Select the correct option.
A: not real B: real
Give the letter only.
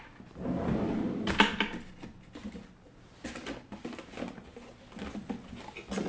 B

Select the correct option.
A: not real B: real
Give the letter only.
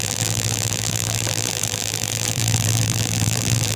A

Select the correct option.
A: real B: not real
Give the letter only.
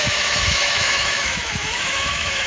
B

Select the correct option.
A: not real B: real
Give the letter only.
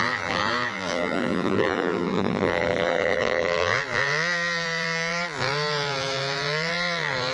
A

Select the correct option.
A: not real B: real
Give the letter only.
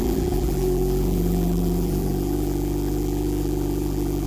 A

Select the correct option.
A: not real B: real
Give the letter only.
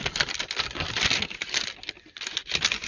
B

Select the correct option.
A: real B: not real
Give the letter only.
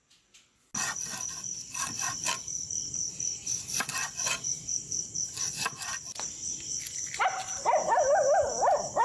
A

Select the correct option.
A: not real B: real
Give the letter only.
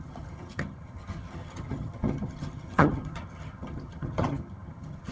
A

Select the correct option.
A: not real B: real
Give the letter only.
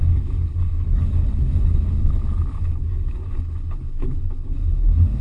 A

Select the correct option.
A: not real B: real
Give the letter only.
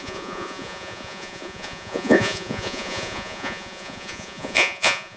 A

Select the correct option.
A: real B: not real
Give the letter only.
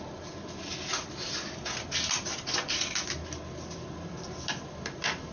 A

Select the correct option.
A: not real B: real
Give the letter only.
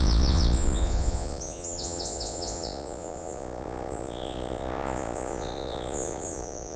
A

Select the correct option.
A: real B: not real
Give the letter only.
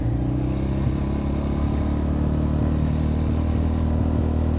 A